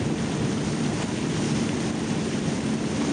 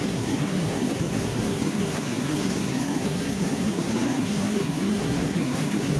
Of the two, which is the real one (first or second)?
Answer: first